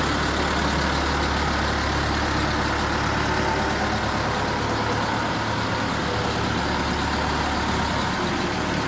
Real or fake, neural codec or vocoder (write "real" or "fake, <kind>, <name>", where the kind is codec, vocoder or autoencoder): real